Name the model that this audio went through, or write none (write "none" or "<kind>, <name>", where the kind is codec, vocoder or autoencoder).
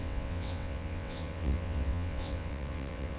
vocoder, WaveNeXt